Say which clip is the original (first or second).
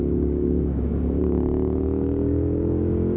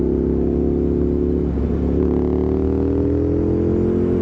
second